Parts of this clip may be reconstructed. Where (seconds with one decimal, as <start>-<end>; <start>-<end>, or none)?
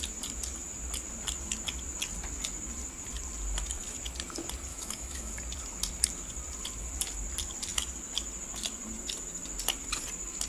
4.7-5.3